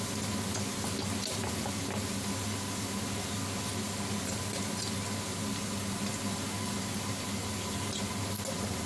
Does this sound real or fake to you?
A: real